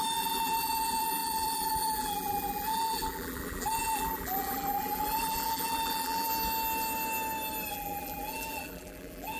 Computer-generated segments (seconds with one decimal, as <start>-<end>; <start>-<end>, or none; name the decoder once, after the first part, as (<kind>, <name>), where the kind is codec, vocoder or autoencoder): 0.0-6.3 (vocoder, BigVGAN v2); 7.7-9.4